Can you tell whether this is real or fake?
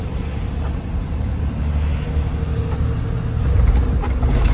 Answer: real